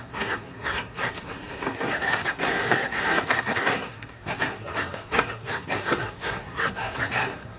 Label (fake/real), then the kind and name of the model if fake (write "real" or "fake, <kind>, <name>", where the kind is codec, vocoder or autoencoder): fake, codec, SNAC